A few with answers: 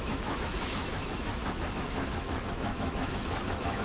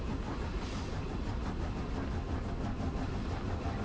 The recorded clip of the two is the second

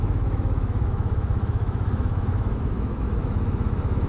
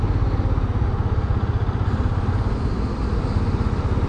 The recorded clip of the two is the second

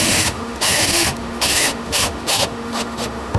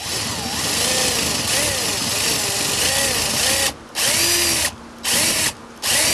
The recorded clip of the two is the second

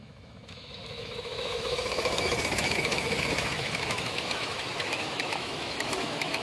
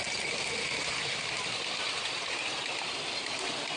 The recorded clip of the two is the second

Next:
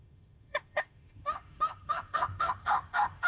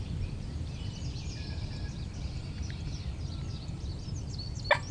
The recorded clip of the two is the second